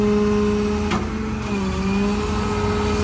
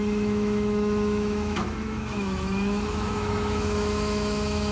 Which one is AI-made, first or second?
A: second